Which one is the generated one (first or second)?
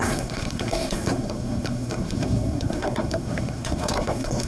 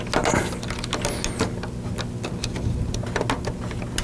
first